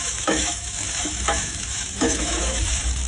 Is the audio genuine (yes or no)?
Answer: no